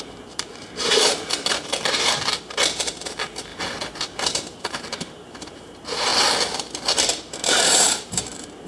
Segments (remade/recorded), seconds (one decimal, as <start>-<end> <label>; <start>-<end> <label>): 0.0-3.5 remade; 3.5-4.0 recorded; 4.0-6.1 remade; 6.1-7.5 recorded; 7.5-8.7 remade